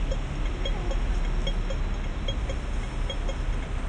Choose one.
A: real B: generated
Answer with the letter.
A